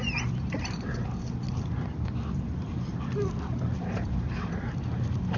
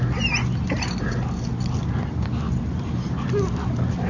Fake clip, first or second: first